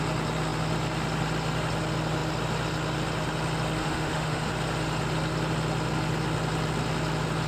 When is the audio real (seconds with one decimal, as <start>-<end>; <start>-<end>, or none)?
0.0-3.8; 4.5-7.5